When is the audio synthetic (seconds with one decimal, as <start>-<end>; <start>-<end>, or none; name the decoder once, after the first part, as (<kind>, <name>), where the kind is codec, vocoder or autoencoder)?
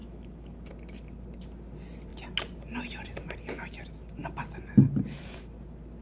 0.0-0.7 (autoencoder, DAC-VAE)